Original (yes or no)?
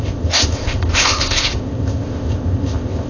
no